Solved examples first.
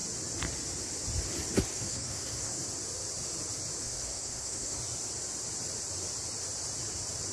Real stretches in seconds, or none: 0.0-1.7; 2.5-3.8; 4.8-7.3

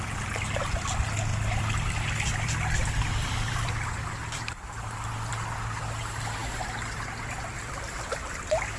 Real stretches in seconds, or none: 0.0-1.3; 5.3-6.4; 7.5-8.8

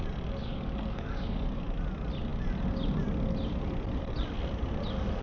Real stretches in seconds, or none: 0.0-0.4; 1.6-5.2

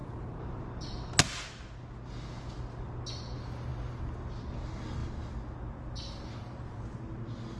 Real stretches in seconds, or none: 0.6-7.6